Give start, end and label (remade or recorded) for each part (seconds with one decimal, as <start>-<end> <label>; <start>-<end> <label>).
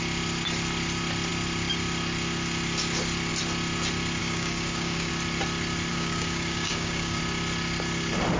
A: 0.0-4.2 recorded; 4.2-5.1 remade; 5.1-5.9 recorded; 5.9-7.2 remade; 7.2-8.4 recorded